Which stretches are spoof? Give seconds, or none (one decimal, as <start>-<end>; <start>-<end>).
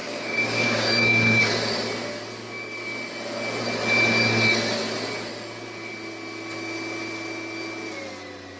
0.0-1.4